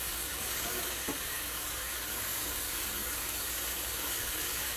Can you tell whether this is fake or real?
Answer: fake